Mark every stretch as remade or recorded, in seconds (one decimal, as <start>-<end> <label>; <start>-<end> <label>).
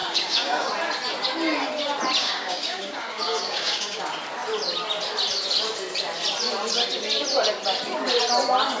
0.0-0.7 remade; 0.7-2.2 recorded; 2.2-4.0 remade; 4.0-8.8 recorded